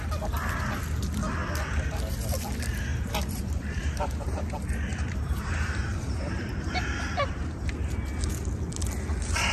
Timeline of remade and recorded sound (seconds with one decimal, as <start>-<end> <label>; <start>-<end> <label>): 0.0-2.9 recorded; 2.9-4.5 remade; 4.5-4.9 recorded; 4.9-8.0 remade; 8.0-9.5 recorded